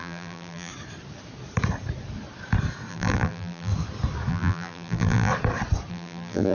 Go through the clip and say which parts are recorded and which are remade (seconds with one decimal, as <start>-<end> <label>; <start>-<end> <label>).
0.0-0.7 remade; 0.7-2.9 recorded; 2.9-3.7 remade; 3.7-4.3 recorded; 4.3-5.3 remade; 5.3-5.9 recorded; 5.9-6.5 remade